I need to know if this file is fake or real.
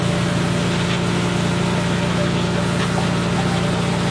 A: real